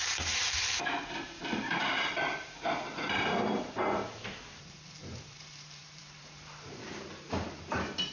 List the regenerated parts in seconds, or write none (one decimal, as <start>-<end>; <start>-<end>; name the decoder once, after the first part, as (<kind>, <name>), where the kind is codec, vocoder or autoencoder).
0.0-8.1 (vocoder, BigVGAN v2)